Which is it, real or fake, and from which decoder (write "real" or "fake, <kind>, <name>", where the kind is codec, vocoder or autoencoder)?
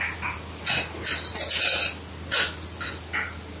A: real